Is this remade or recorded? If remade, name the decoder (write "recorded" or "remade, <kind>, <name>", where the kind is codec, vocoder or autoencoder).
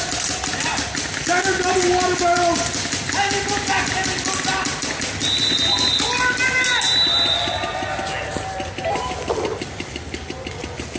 recorded